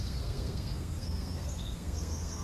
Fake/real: fake